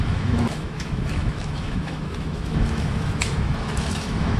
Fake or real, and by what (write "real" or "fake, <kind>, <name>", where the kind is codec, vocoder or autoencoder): fake, autoencoder, DAC-VAE